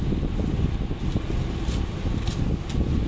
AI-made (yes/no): no